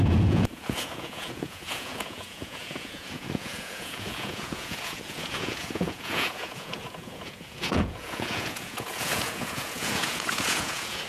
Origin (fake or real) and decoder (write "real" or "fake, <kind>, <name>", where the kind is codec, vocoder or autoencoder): fake, vocoder, Vocos